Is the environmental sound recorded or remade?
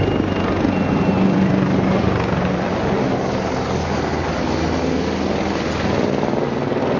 recorded